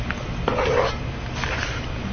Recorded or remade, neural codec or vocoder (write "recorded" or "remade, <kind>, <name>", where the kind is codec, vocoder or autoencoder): recorded